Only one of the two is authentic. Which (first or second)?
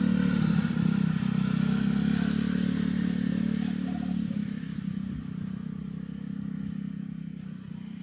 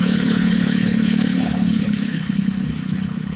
first